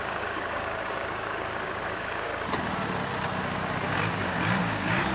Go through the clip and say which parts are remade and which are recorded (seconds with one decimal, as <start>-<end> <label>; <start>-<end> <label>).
0.0-2.3 remade; 2.3-4.6 recorded; 4.6-5.1 remade